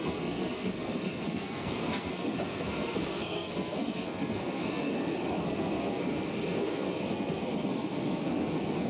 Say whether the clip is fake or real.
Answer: fake